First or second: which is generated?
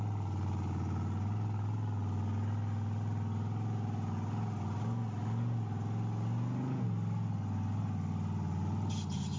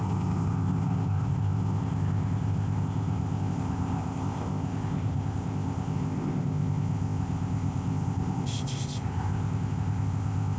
second